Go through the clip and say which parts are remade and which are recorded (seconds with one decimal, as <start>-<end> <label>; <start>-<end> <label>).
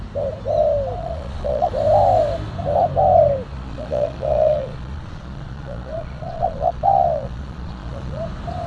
0.0-1.0 recorded; 1.0-1.7 remade; 1.7-3.5 recorded; 3.5-8.2 remade; 8.2-8.7 recorded